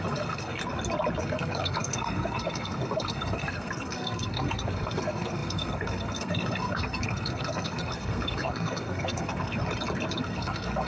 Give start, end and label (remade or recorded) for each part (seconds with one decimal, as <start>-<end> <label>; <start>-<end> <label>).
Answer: 0.0-0.6 remade; 0.6-1.2 recorded; 1.2-9.6 remade; 9.6-10.2 recorded; 10.2-10.9 remade